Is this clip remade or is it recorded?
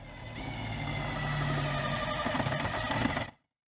recorded